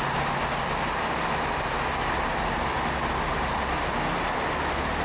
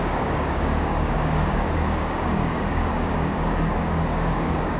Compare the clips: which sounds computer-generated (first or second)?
second